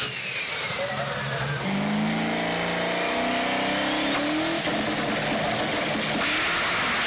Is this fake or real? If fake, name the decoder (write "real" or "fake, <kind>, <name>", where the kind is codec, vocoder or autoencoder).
real